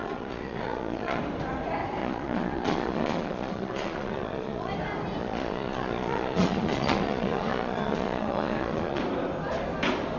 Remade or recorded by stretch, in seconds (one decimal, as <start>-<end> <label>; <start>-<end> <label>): 0.0-1.2 remade; 1.2-2.0 recorded; 2.0-4.7 remade; 4.7-5.2 recorded; 5.2-9.0 remade; 9.0-10.2 recorded